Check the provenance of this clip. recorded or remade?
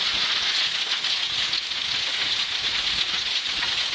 remade